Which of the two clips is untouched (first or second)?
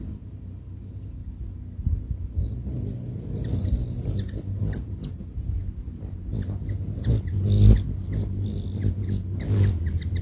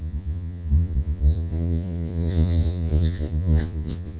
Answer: first